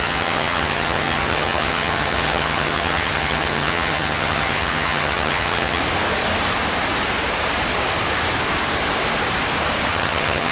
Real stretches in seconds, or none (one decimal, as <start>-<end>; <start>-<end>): 5.8-9.9